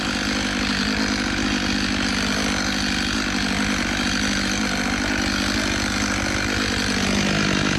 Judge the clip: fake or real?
real